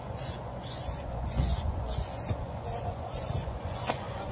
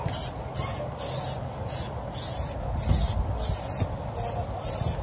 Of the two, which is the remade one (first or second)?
first